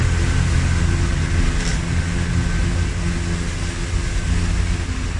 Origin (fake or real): real